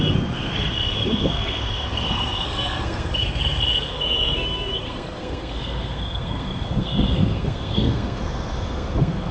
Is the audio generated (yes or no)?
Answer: yes